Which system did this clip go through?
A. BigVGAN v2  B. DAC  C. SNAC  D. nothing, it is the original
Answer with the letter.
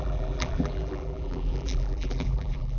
A